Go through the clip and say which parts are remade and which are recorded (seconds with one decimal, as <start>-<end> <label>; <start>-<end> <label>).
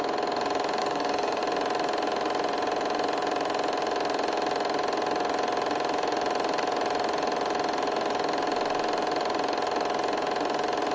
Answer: 0.0-0.8 recorded; 0.8-1.4 remade; 1.4-10.9 recorded